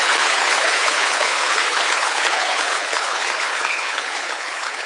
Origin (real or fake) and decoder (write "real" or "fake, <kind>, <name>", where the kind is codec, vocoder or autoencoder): fake, codec, HILCodec